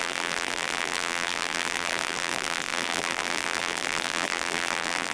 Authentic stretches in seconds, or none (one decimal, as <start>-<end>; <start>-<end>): none